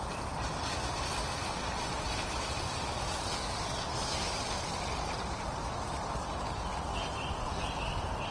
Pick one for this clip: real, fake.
real